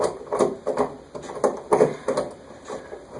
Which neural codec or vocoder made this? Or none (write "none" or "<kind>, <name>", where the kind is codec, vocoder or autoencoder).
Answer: none